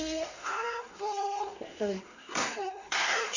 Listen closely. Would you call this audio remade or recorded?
remade